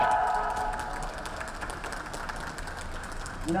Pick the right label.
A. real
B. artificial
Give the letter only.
A